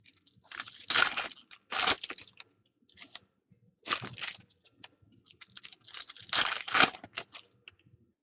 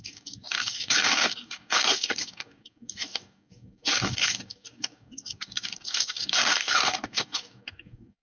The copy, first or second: second